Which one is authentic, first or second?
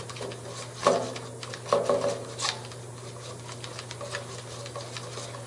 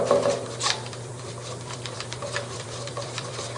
first